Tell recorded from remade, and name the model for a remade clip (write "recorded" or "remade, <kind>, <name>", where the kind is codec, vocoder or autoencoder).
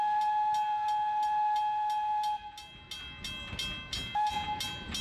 recorded